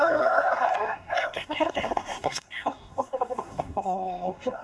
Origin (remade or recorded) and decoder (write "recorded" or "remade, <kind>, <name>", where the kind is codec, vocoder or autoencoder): remade, codec, SNAC